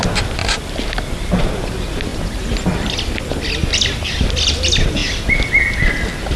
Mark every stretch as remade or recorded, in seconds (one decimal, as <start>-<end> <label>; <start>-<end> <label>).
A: 0.0-2.1 recorded; 2.1-3.2 remade; 3.2-5.0 recorded; 5.0-5.5 remade; 5.5-6.4 recorded

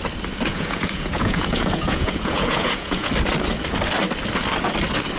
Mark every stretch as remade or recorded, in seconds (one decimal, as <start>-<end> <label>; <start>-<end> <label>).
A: 0.0-0.5 recorded; 0.5-3.1 remade; 3.1-5.2 recorded

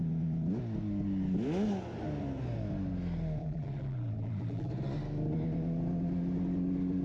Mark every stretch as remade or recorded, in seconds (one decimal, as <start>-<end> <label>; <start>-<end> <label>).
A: 0.0-3.4 recorded; 3.4-4.7 remade; 4.7-7.0 recorded

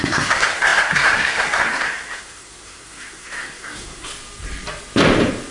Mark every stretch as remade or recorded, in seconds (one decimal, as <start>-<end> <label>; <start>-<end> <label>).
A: 0.0-4.1 remade; 4.1-5.5 recorded

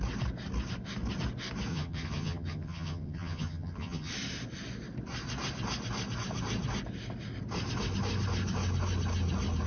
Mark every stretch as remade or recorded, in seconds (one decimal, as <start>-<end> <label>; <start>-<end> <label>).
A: 0.0-1.7 recorded; 1.7-4.1 remade; 4.1-9.7 recorded

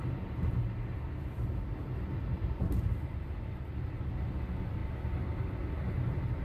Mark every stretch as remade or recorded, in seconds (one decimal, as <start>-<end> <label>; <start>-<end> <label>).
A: 0.0-2.3 recorded; 2.3-2.9 remade; 2.9-6.4 recorded